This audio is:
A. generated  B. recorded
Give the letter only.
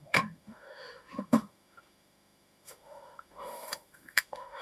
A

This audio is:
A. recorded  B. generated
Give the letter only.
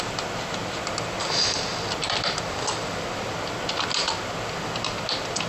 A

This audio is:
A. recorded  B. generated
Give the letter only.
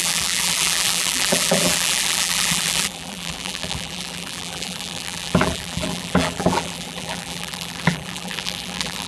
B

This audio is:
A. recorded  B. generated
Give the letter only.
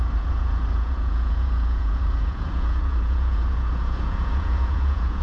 B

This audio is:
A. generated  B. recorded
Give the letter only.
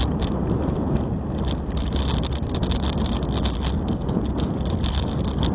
B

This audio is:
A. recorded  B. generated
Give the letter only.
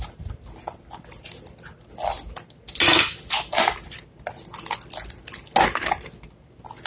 A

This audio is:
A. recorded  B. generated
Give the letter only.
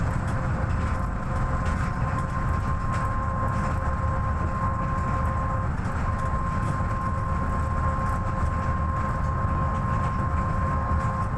A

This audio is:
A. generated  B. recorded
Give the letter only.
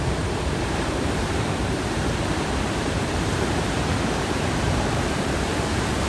A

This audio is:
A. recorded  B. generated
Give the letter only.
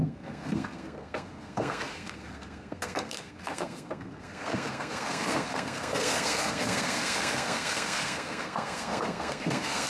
B